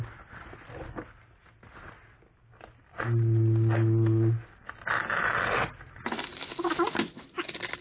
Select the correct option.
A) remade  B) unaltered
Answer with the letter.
B